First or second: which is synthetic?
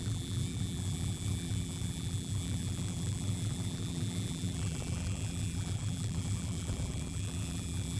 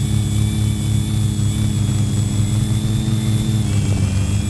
first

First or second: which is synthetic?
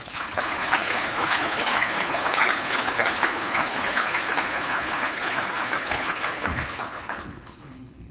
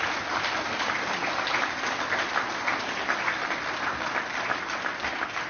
first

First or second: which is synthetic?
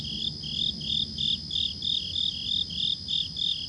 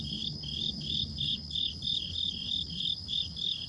second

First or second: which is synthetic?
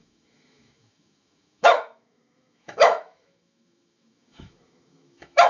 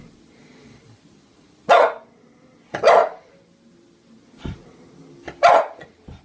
first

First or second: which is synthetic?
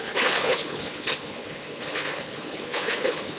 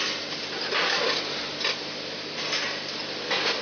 first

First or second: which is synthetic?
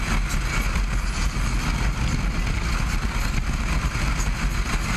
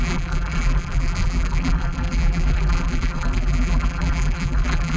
second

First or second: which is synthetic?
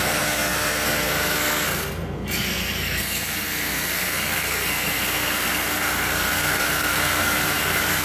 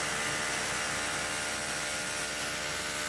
first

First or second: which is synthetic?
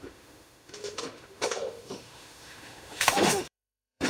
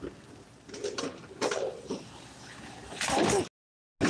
first